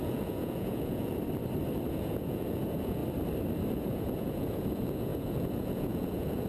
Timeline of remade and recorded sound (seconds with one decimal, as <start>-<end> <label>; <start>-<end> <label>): 0.0-1.1 remade; 1.1-1.9 recorded; 1.9-3.0 remade; 3.0-3.7 recorded; 3.7-6.5 remade